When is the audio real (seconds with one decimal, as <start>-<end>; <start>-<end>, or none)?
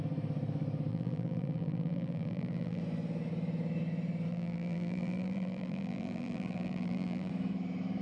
0.0-0.9; 2.8-4.3; 7.3-8.0